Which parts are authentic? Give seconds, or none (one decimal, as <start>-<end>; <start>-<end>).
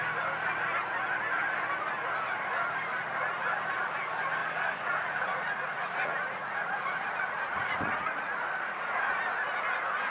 0.0-4.4; 9.0-10.1